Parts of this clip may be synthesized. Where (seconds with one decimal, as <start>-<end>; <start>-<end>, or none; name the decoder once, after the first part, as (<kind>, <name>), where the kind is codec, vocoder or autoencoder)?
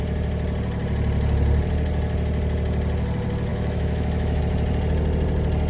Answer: 3.5-4.4 (autoencoder, DAC-VAE)